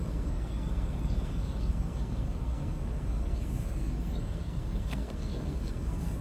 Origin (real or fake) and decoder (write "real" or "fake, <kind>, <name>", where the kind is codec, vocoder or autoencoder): fake, codec, SNAC